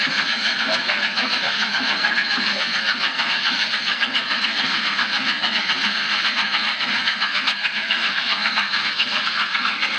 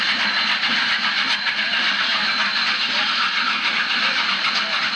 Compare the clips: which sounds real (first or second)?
second